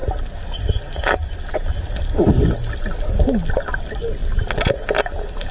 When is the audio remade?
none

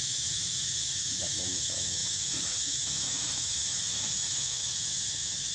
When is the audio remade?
0.0-5.5 (autoencoder, DAC-VAE)

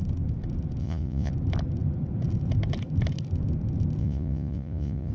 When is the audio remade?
0.8-1.3 (vocoder, Vocos); 4.0-5.1

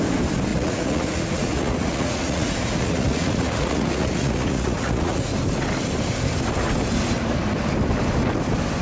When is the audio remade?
0.5-5.3 (vocoder, Vocos)

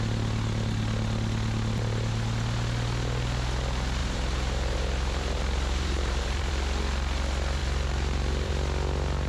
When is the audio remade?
4.0-6.5 (vocoder, BigVGAN v2); 7.6-8.5

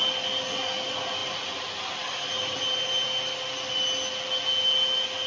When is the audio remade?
1.2-2.8 (vocoder, BigVGAN v2)